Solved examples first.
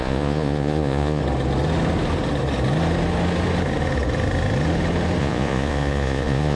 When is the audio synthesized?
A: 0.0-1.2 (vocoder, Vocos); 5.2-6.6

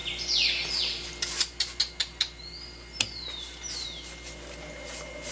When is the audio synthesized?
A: none

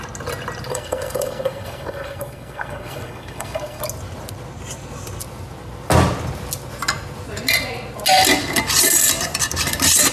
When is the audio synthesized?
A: 0.7-3.8 (codec, SNAC)

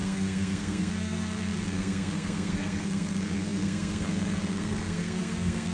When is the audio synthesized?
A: 0.0-5.7 (codec, SNAC)

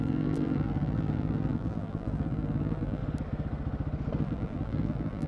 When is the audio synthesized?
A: 0.0-3.0 (vocoder, BigVGAN v2); 4.2-5.3

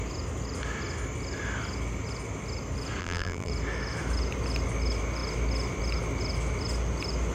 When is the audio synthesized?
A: 3.0-3.5 (vocoder, BigVGAN v2)

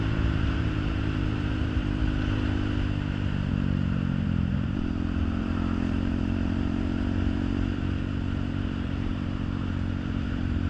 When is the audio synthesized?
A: 0.0-2.0 (vocoder, BigVGAN v2); 3.5-10.7